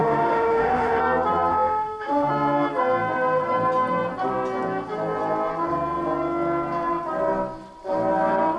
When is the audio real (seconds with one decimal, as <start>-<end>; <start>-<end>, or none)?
1.0-1.5; 2.3-8.6